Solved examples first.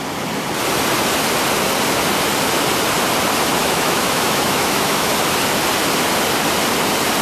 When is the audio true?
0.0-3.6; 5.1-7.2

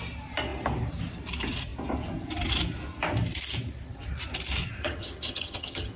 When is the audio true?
0.0-4.8

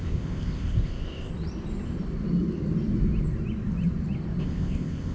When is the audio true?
1.3-4.4

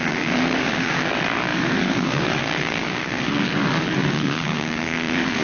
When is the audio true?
none

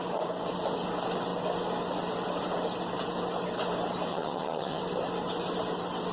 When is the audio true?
0.0-4.1; 4.8-6.1

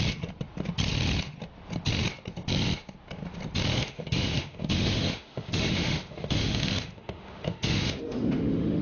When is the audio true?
0.0-3.7

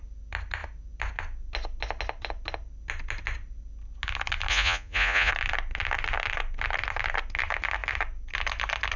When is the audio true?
0.0-4.5; 5.3-9.0